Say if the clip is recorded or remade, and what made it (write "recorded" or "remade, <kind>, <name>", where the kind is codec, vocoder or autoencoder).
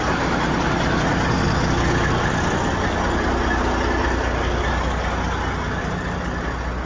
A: recorded